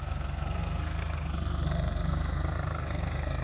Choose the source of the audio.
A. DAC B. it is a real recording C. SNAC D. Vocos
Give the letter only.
C